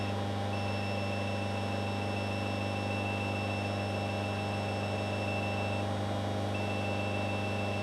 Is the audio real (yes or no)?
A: yes